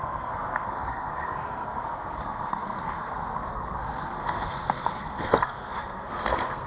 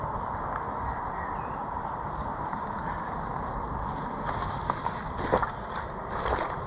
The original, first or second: second